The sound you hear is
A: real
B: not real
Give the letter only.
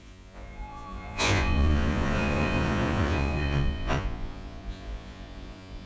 B